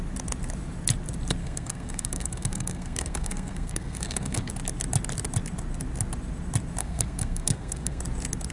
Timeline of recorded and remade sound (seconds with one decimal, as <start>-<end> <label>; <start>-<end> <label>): 0.0-1.4 recorded; 1.4-4.5 remade; 4.5-6.8 recorded; 6.8-8.0 remade; 8.0-8.5 recorded